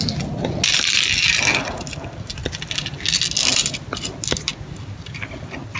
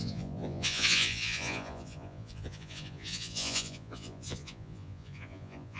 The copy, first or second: second